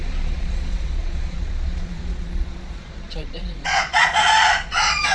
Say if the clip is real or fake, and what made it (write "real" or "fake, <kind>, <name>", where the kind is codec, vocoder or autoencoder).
fake, vocoder, Vocos